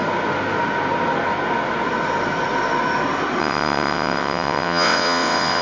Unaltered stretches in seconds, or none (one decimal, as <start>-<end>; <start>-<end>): 0.0-3.4